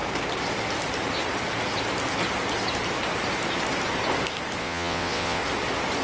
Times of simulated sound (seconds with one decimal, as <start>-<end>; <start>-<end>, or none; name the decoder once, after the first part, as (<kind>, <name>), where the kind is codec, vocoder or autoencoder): 4.6-5.4 (vocoder, WaveNeXt)